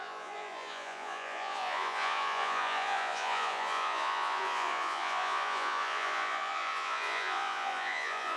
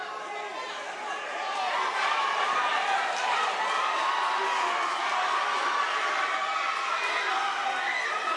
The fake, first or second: first